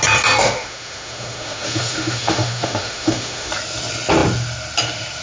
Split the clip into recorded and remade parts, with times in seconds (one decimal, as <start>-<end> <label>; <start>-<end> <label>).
0.0-0.4 recorded; 0.4-3.5 remade; 3.5-5.2 recorded